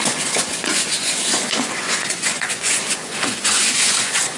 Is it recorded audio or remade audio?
remade